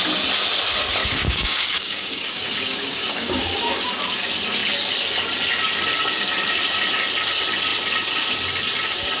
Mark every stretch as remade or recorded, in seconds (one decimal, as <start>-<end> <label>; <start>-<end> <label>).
0.0-1.0 recorded; 1.0-4.0 remade; 4.0-9.2 recorded